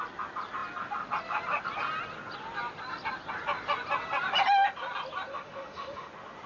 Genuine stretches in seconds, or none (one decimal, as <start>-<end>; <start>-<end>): 0.0-5.3; 6.1-6.5